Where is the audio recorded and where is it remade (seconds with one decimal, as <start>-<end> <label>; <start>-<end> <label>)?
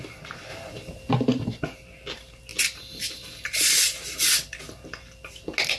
0.0-5.8 recorded